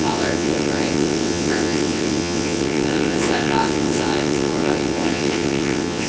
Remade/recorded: remade